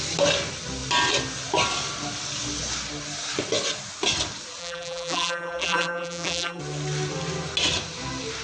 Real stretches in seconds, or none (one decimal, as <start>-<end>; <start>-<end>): 0.0-4.6; 6.6-8.4